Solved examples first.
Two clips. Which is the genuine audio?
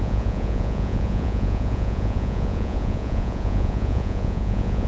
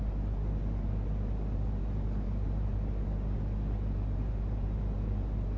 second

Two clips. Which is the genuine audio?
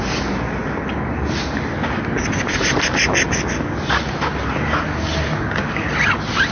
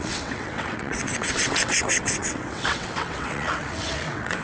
first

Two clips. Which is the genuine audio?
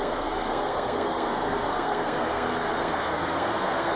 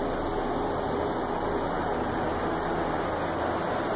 second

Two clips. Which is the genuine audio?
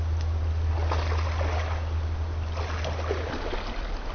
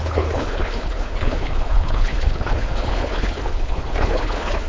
first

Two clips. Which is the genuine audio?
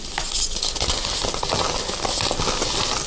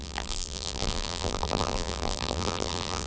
first